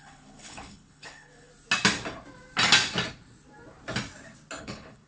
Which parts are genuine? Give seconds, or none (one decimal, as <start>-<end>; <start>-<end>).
1.5-4.6